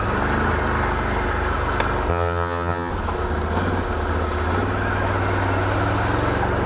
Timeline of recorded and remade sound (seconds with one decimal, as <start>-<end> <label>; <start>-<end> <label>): 0.0-2.1 recorded; 2.1-2.9 remade; 2.9-6.7 recorded